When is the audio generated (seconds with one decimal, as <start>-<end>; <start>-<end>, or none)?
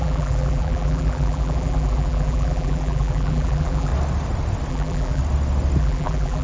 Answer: 0.0-3.9; 4.7-5.2; 5.8-6.4